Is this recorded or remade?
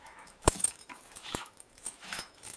remade